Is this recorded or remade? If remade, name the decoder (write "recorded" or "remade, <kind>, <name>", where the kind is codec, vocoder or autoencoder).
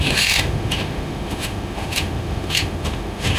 remade, autoencoder, DAC-VAE